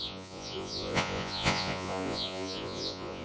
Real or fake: fake